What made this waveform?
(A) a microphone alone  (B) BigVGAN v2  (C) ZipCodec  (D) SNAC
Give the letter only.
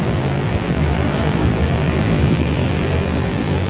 B